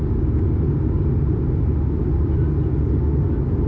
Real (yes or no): yes